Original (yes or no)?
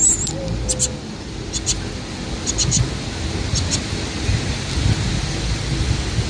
yes